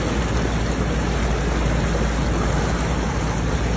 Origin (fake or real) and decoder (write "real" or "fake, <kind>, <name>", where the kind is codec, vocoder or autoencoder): real